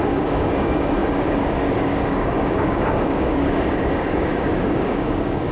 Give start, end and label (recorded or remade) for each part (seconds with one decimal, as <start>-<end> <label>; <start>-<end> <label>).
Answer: 0.0-5.5 remade